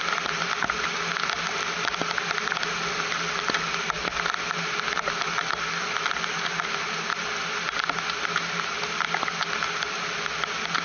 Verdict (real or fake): real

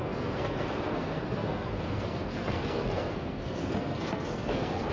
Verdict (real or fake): fake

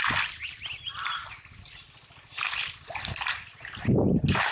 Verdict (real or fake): real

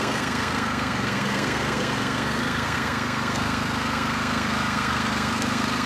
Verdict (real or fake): fake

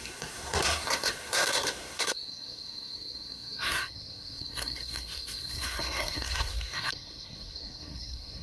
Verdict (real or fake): fake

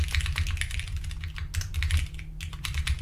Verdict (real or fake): real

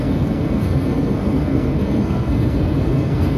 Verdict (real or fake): fake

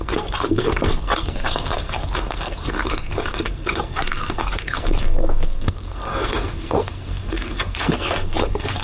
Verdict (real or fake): fake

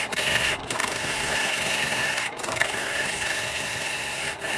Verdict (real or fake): fake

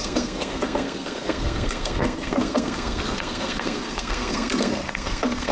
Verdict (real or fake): fake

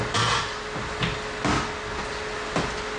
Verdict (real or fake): real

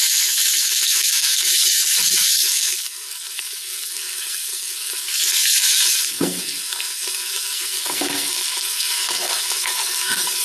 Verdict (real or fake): fake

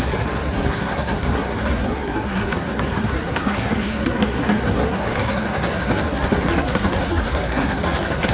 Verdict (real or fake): fake